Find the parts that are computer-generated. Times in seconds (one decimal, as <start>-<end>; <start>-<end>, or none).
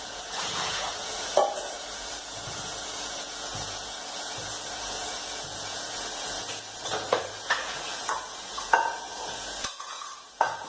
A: 0.0-10.7